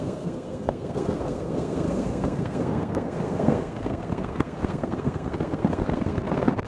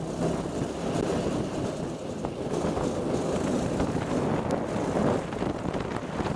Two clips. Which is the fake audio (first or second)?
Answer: first